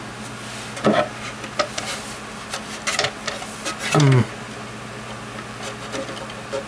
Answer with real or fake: real